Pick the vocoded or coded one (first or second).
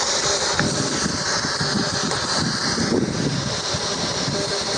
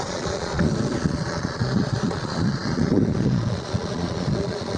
second